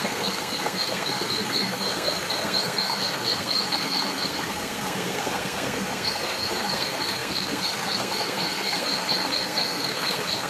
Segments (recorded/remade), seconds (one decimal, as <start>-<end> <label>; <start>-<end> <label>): 0.0-10.5 remade